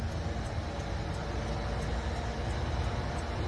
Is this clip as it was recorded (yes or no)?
yes